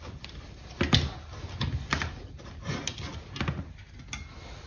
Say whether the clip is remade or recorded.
recorded